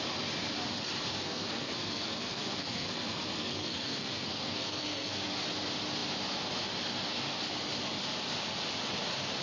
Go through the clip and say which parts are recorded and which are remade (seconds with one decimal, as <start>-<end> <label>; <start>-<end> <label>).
0.0-1.1 recorded; 1.1-5.3 remade; 5.3-9.4 recorded